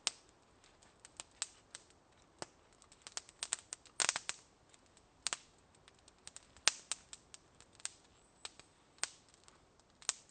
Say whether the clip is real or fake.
real